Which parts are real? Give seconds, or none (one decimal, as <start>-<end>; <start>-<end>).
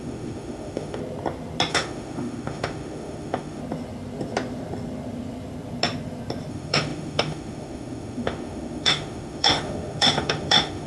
1.0-1.7; 3.6-6.5